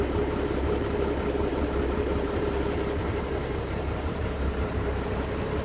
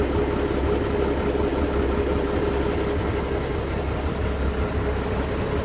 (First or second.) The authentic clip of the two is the second